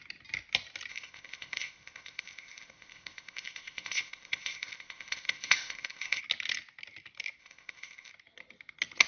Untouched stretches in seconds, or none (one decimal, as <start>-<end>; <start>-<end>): 0.0-0.9; 6.2-7.4; 8.1-9.1